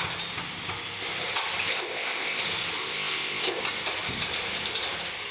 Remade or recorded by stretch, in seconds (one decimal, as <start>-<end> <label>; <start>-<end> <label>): 0.0-1.7 recorded; 1.7-2.4 remade; 2.4-2.8 recorded; 2.8-3.6 remade; 3.6-5.3 recorded